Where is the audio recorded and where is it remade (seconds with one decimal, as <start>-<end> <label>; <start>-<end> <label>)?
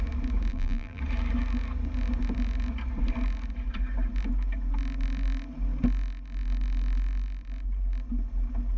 0.0-0.5 recorded; 0.5-1.0 remade; 1.0-8.8 recorded